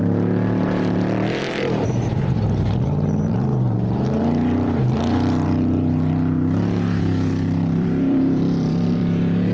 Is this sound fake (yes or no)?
yes